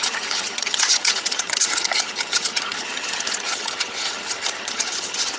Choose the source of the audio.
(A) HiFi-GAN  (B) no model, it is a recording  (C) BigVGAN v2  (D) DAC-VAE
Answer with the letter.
A